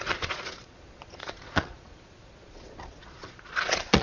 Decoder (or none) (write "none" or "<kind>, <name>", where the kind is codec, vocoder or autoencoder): vocoder, Vocos